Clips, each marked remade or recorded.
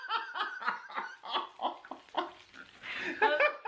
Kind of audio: recorded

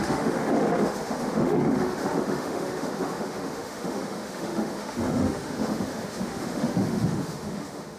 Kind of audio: remade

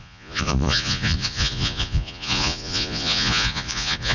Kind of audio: remade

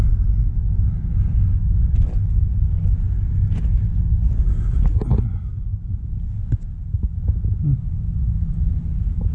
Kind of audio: recorded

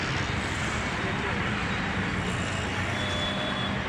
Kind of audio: recorded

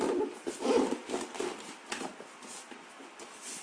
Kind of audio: recorded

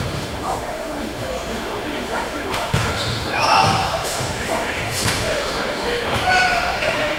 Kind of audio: remade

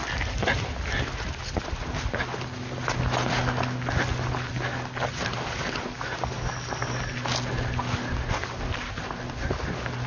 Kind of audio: recorded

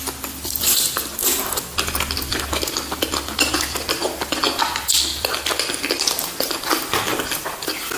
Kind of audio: recorded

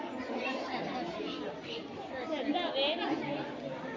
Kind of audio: recorded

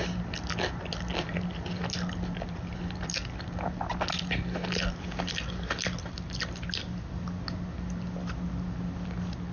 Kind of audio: recorded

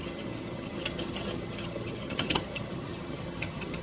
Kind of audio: remade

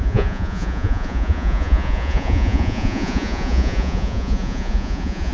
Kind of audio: remade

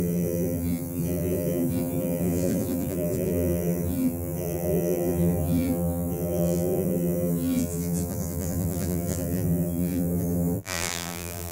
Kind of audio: remade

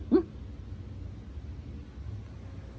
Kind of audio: recorded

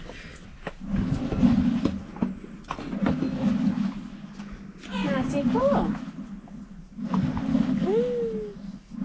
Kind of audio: recorded